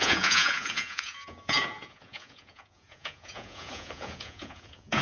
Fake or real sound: fake